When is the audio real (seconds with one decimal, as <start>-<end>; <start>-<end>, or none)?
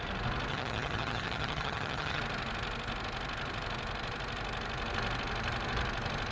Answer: 0.0-0.5; 2.2-6.3